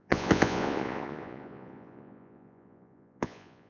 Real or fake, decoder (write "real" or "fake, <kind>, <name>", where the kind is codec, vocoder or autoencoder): fake, vocoder, Vocos